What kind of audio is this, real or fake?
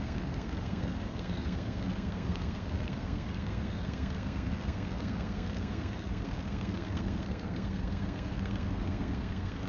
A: fake